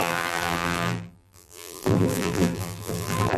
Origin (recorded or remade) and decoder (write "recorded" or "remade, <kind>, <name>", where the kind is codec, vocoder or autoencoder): remade, vocoder, BigVGAN v2